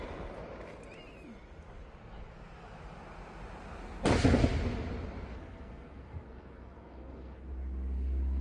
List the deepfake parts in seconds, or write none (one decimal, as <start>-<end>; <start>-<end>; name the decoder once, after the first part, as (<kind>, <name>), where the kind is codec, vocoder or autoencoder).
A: 5.3-7.5 (codec, SNAC)